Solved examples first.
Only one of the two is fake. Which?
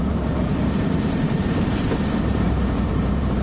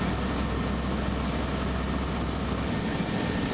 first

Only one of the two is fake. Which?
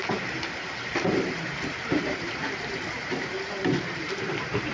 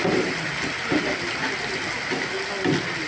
first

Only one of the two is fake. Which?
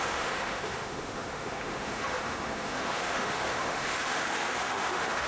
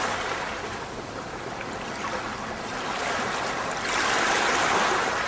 first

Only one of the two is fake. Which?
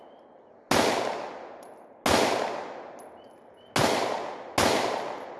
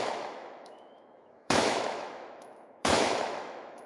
second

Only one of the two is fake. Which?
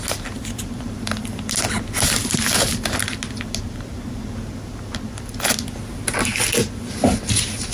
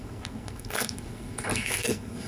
second